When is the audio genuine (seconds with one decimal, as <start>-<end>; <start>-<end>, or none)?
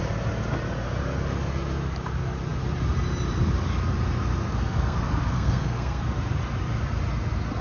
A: 0.0-4.4; 6.0-7.6